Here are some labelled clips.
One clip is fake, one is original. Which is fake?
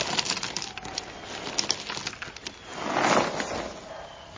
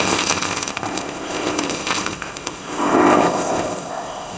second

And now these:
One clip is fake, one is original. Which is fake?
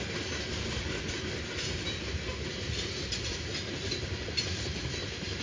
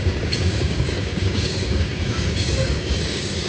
second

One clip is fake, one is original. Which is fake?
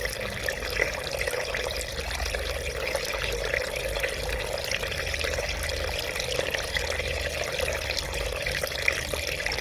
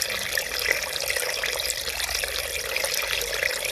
second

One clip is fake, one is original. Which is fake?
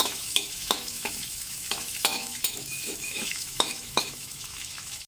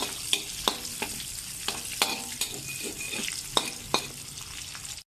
first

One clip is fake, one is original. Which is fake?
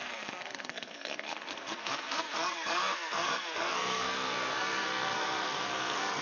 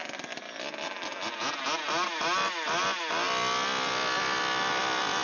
first